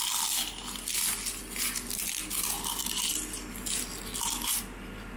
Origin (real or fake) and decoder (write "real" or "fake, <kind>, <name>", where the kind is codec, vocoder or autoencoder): real